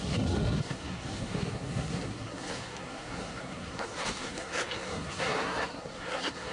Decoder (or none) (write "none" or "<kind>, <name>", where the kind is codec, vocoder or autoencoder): codec, SNAC